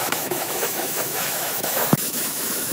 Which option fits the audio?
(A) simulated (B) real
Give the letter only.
A